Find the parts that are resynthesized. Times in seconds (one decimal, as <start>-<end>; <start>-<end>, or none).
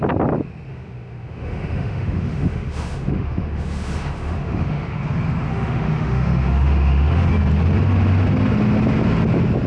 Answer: 0.7-5.0; 5.5-7.3